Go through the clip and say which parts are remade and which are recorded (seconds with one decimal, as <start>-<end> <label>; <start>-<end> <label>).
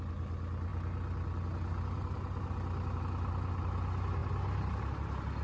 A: 0.0-5.4 recorded